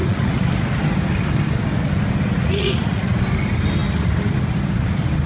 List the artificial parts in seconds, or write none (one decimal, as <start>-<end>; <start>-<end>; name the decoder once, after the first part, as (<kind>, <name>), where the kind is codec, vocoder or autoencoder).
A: 0.0-0.5 (vocoder, Vocos); 2.4-3.2

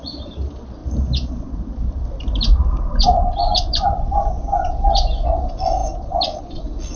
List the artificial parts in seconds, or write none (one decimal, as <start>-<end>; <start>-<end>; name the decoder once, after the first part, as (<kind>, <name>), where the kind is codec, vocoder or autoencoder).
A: 0.8-4.3 (vocoder, BigVGAN v2)

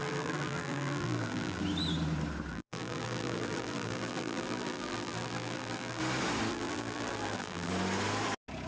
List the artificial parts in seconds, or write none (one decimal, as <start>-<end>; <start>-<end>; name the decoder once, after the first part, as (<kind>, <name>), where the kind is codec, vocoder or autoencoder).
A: 0.0-1.6 (vocoder, BigVGAN v2); 2.5-6.0; 6.5-7.7

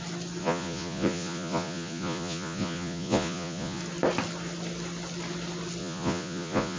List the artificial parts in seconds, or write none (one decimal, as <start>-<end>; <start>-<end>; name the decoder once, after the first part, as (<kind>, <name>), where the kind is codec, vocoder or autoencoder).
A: 0.4-3.8 (vocoder, Vocos); 5.8-6.8

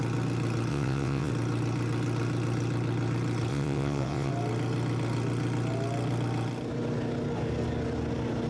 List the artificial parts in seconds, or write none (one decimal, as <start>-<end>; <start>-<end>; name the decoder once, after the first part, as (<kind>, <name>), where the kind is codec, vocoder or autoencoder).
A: 0.7-1.3 (vocoder, WaveNeXt); 3.5-4.3

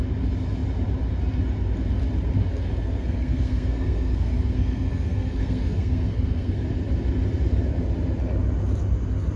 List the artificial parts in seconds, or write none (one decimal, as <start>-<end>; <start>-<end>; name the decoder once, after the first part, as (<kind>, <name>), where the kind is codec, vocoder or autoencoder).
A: 2.5-6.6 (codec, SNAC)